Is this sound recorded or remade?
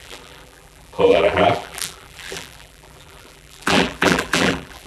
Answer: remade